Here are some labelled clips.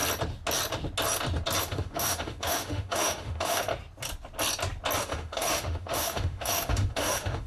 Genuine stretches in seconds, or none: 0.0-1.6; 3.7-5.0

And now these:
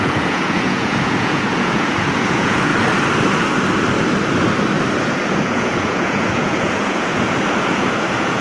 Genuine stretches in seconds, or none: 2.7-5.0

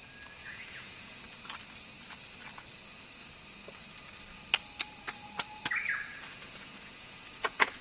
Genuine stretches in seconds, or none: 0.0-0.4; 1.2-6.1

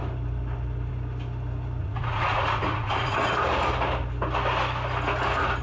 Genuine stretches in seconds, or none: 0.0-1.8; 3.3-5.6

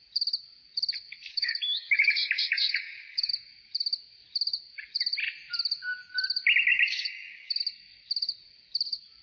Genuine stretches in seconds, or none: 0.0-1.3; 3.3-6.7; 7.6-9.2

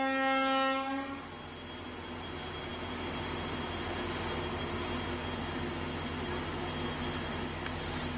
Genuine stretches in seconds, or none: 0.0-8.2

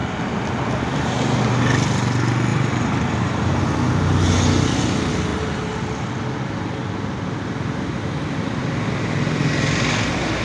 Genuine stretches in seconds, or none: 0.0-2.5; 3.6-10.4